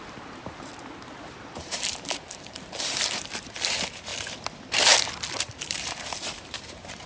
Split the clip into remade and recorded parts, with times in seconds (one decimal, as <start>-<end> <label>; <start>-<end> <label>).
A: 0.0-0.7 remade; 0.7-1.6 recorded; 1.6-4.1 remade; 4.1-5.4 recorded; 5.4-7.1 remade